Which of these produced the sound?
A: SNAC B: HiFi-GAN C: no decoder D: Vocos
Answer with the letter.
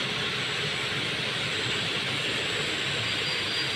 C